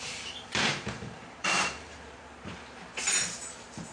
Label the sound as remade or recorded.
remade